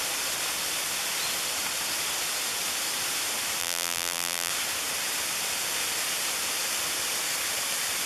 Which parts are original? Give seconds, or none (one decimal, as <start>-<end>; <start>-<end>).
0.0-3.6; 4.5-8.1